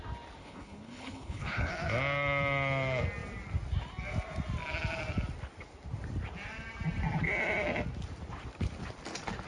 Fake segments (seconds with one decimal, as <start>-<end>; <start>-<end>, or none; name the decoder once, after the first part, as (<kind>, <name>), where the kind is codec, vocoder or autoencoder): 0.4-1.7 (codec, HILCodec)